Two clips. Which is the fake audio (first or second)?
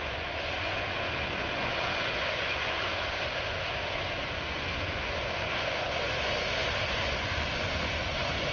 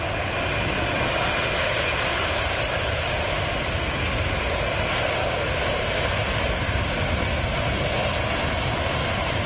first